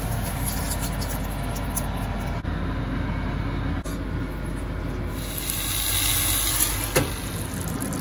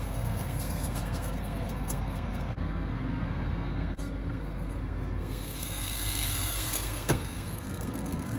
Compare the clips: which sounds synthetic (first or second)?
second